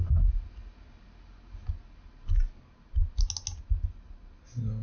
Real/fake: real